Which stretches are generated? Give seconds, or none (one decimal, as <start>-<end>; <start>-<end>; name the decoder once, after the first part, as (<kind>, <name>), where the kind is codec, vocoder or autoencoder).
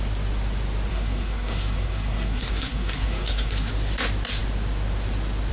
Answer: 0.9-3.7 (codec, SNAC)